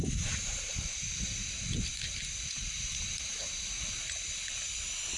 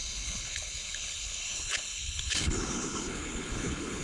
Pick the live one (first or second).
first